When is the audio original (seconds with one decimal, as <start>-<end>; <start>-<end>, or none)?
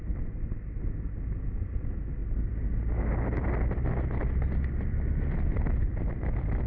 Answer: 0.0-6.7